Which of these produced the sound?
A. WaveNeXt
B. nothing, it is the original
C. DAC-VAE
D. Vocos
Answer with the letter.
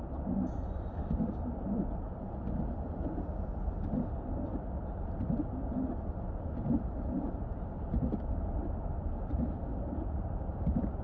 B